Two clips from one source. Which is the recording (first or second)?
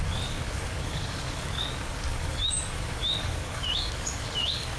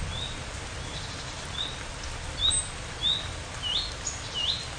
second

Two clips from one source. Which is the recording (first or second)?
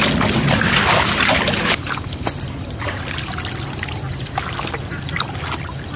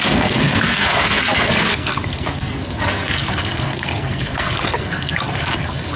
first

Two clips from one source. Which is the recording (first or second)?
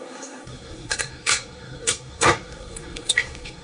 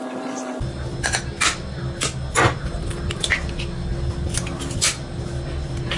second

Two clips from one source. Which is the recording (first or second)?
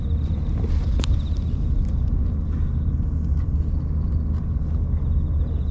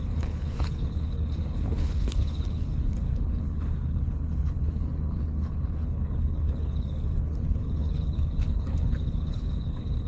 first